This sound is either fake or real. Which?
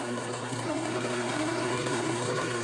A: fake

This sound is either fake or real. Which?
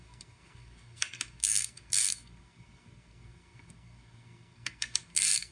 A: fake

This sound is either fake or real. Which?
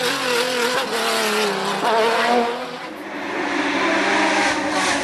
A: real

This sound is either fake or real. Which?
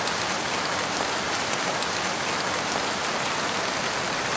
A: real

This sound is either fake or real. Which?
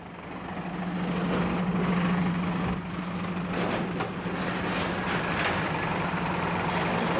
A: real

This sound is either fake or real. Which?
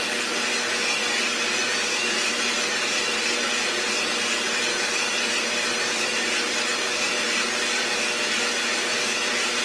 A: real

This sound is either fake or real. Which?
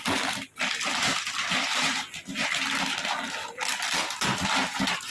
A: real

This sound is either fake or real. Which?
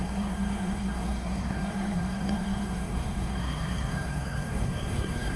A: fake